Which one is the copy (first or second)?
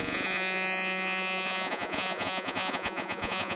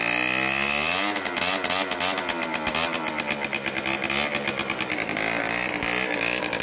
first